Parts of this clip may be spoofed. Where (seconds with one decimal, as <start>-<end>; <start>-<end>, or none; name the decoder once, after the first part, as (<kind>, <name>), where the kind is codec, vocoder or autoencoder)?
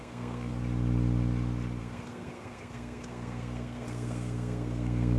0.0-0.5 (codec, SNAC); 1.8-5.2